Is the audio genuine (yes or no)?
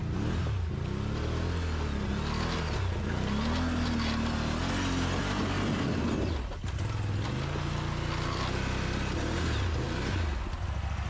yes